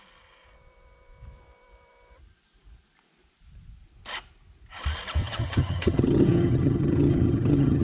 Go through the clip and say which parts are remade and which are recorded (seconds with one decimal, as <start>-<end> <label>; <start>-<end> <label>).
0.0-5.2 recorded; 5.2-7.8 remade